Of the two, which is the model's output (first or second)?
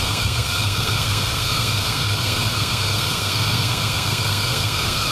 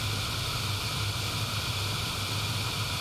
first